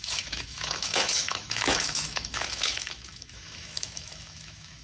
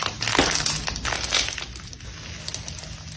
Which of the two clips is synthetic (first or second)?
first